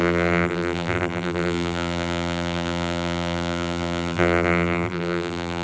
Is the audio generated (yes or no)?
yes